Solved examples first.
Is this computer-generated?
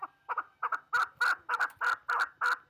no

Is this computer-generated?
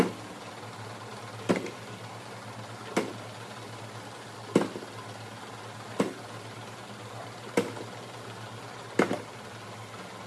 no